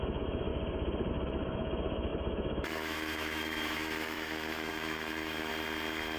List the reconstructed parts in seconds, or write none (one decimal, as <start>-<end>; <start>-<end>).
0.0-0.5; 1.1-5.5